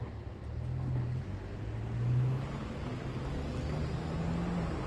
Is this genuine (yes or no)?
yes